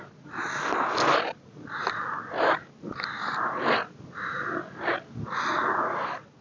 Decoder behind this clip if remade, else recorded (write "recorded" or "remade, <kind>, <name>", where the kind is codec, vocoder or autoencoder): recorded